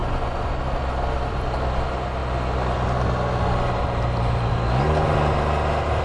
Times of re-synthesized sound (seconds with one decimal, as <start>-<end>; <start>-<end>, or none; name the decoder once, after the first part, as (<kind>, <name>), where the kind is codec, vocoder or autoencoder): 0.0-0.5 (vocoder, Vocos)